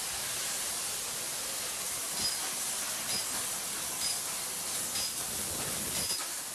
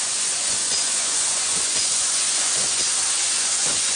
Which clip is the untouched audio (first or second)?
first